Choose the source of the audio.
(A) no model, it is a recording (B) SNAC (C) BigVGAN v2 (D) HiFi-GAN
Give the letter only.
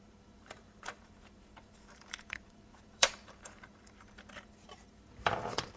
C